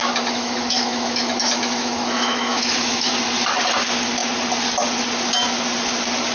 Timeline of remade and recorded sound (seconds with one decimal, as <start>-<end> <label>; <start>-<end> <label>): 0.0-3.1 remade; 3.1-6.3 recorded